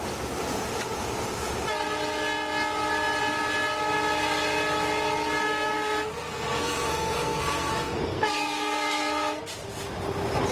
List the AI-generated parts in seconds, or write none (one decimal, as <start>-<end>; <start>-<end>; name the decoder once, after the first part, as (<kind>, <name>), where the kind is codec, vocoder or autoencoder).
5.4-9.4 (codec, SNAC)